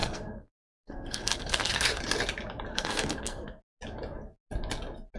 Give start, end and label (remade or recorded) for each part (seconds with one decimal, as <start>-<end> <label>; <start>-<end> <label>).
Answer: 0.0-2.0 remade; 2.0-2.7 recorded; 2.7-3.6 remade; 3.6-5.2 recorded